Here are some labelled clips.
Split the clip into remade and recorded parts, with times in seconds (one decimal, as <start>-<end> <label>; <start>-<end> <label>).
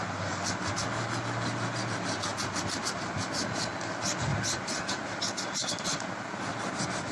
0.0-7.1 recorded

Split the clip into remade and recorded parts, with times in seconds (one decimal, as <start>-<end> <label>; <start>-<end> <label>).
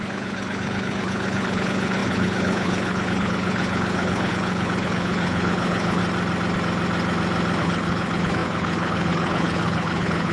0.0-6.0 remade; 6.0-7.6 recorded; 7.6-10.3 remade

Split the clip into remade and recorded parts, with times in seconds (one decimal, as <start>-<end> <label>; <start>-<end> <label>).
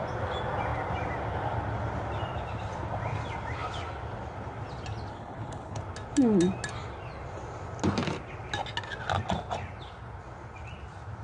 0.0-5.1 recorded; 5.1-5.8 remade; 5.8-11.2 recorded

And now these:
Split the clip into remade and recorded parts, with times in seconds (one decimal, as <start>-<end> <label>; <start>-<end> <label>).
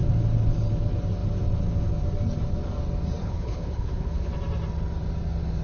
0.0-3.2 recorded; 3.2-4.3 remade; 4.3-5.6 recorded